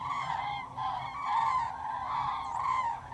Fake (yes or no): yes